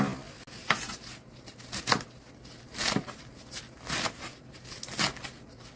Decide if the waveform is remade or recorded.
recorded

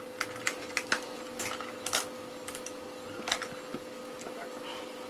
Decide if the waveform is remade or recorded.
recorded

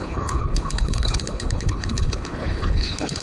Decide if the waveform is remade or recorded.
remade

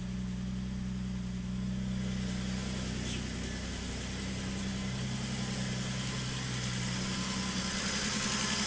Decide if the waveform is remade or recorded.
recorded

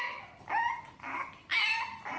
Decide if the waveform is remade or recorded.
recorded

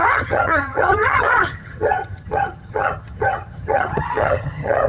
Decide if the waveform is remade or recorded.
remade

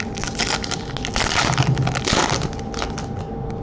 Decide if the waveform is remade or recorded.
recorded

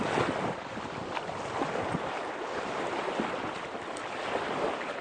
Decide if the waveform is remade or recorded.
recorded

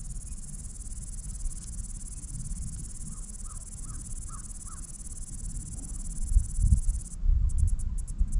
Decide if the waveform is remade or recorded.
recorded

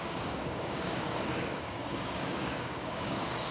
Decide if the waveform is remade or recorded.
remade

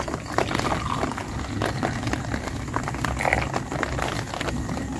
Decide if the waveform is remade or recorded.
recorded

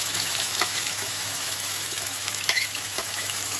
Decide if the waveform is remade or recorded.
remade